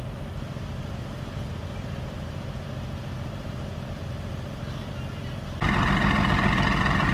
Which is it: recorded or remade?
recorded